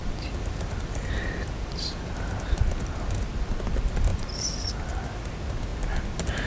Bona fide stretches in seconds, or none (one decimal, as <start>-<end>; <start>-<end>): 2.6-4.1; 5.3-6.5